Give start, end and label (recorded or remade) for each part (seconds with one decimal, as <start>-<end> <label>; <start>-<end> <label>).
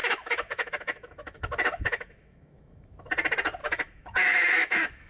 0.0-3.1 remade; 3.1-3.6 recorded; 3.6-5.1 remade